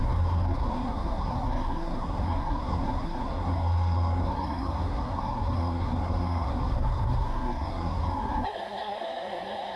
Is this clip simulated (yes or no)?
yes